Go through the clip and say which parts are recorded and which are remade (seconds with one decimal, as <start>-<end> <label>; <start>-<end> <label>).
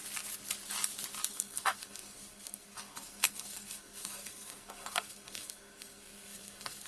0.0-1.3 recorded; 1.3-6.9 remade